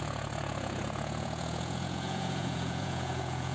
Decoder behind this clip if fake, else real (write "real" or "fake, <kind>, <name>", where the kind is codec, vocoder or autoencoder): fake, vocoder, Vocos